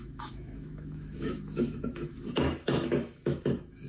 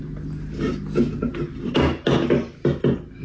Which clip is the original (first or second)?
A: second